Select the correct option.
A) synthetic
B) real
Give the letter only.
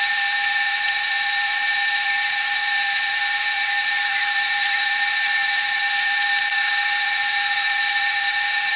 A